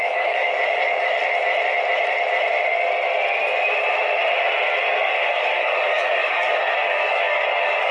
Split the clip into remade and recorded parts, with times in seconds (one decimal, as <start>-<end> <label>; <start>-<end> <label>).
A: 0.0-1.2 remade; 1.2-4.9 recorded; 4.9-7.9 remade